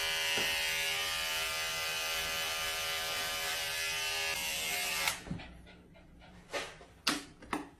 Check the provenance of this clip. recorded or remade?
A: recorded